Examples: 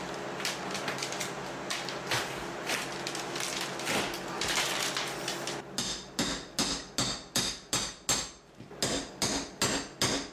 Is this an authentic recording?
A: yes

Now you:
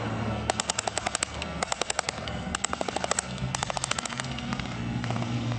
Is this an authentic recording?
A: no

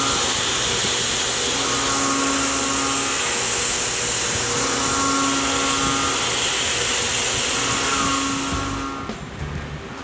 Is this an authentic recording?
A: yes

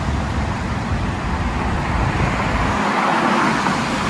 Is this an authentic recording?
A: yes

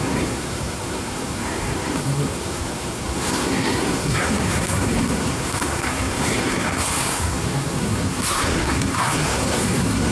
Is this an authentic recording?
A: no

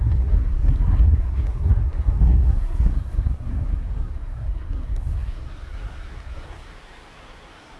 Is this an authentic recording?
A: no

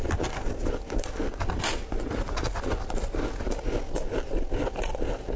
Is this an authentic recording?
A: yes